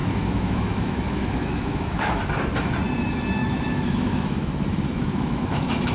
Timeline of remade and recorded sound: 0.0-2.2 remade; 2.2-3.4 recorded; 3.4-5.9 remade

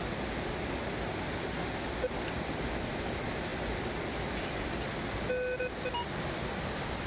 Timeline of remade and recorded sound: 0.0-7.1 recorded

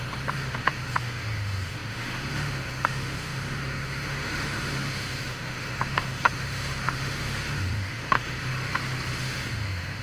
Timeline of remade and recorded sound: 0.0-8.5 remade; 8.5-9.2 recorded; 9.2-10.0 remade

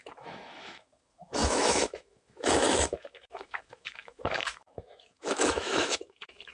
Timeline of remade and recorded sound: 0.0-6.5 remade

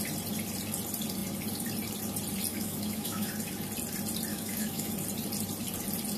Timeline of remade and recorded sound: 0.0-2.5 recorded; 2.5-3.3 remade; 3.3-4.3 recorded; 4.3-4.9 remade; 4.9-6.2 recorded

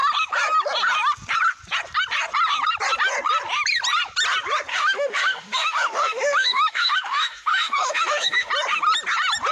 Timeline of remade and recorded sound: 0.0-4.7 recorded; 4.7-8.5 remade; 8.5-9.5 recorded

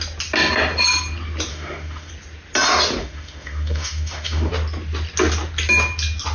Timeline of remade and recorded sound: 0.0-1.5 recorded; 1.5-2.1 remade; 2.1-3.0 recorded; 3.0-4.5 remade; 4.5-6.3 recorded

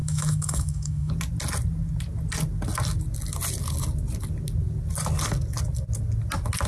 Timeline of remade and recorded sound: 0.0-1.1 remade; 1.1-6.7 recorded